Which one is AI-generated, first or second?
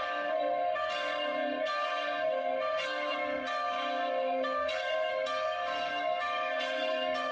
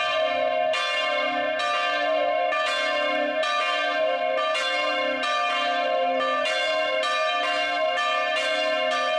first